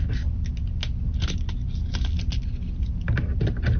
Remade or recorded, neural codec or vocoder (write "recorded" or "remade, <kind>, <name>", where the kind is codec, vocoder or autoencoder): recorded